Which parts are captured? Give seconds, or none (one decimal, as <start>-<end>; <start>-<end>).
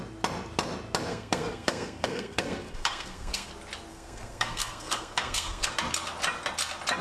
0.0-1.1; 3.5-3.9; 5.7-7.0